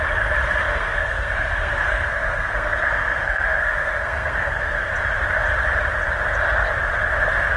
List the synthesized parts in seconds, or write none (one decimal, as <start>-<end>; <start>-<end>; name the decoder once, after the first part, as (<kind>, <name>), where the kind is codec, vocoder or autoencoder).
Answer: 0.7-4.9 (codec, SNAC)